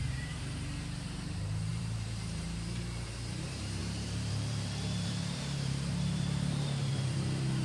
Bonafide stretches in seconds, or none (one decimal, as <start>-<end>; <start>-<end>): none